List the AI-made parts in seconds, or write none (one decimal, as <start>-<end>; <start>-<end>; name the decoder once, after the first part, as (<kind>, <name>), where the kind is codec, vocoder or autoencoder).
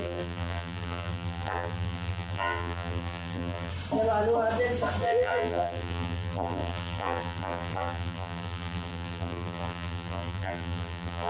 0.0-3.7 (vocoder, BigVGAN v2); 5.0-11.3